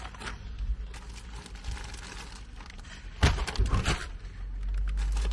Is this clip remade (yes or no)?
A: no